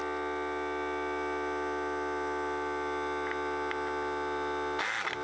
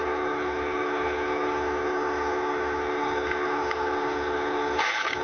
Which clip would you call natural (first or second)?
first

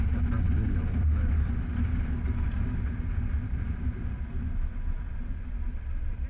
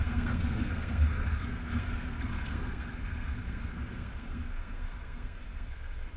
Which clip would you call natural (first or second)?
first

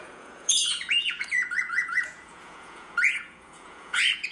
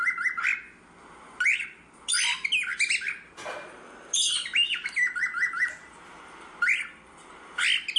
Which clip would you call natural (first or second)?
second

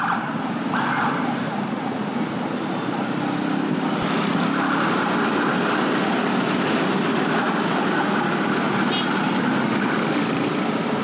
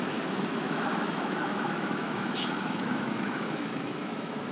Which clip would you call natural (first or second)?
first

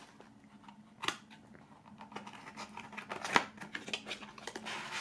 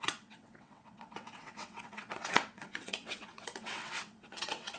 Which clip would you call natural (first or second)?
first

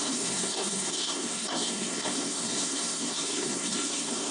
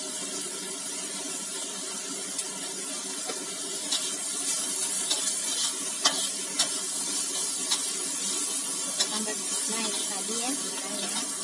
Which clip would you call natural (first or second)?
second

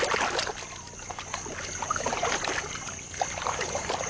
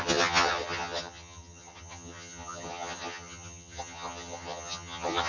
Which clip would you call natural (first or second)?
first